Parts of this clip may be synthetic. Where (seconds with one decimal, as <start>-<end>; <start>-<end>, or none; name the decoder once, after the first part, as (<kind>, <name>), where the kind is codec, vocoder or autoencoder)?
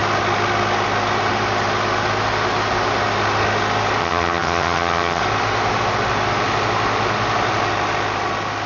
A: 4.0-5.2 (vocoder, HiFi-GAN)